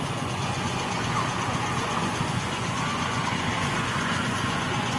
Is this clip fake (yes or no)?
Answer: yes